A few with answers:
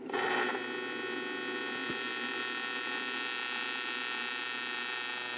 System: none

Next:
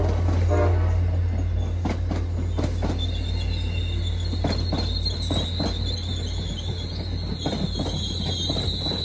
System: none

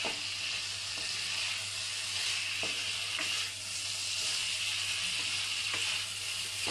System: none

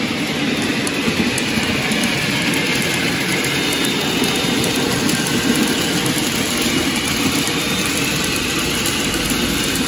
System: none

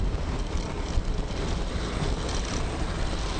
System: none